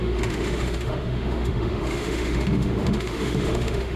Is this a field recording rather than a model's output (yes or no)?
no